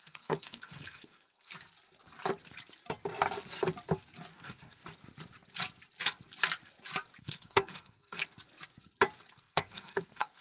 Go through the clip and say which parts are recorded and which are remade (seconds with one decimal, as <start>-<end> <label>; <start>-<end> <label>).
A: 0.0-1.5 remade; 1.5-4.3 recorded; 4.3-4.8 remade; 4.8-7.2 recorded; 7.2-8.2 remade; 8.2-9.3 recorded; 9.3-10.4 remade